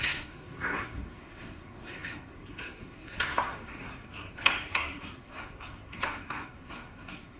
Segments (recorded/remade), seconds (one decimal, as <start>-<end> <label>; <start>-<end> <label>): 0.0-7.4 remade